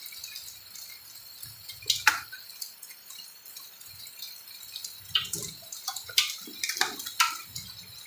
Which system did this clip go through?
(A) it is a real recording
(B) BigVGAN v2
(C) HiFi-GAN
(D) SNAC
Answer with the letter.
A